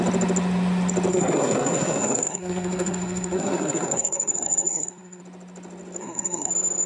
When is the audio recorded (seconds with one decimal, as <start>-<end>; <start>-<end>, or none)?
0.0-1.1; 5.2-6.0; 6.5-6.9